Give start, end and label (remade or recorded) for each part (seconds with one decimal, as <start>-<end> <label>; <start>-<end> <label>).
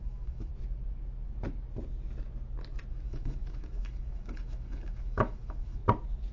0.0-0.5 remade; 0.5-2.9 recorded; 2.9-5.8 remade; 5.8-6.3 recorded